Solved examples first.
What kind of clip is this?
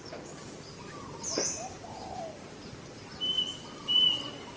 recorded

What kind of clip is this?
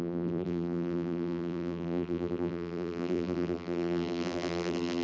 remade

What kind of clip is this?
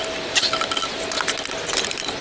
recorded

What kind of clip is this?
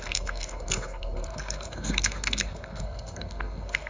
remade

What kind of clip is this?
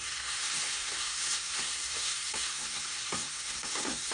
remade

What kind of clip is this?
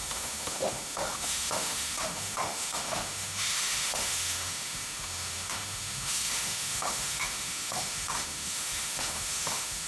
remade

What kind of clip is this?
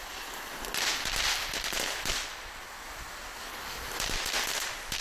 remade